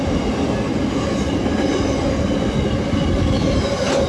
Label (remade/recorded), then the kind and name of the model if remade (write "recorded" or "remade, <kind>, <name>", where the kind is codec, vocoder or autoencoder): recorded